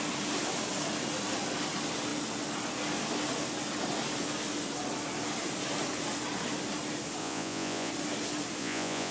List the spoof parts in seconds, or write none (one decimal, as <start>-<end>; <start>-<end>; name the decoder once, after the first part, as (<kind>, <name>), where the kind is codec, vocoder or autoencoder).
7.2-7.9 (vocoder, Vocos); 8.6-9.1